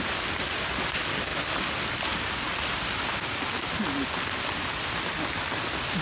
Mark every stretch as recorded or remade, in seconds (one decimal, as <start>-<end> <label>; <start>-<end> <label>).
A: 0.0-6.0 recorded